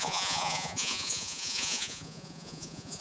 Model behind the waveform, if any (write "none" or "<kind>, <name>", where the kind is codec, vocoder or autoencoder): vocoder, Vocos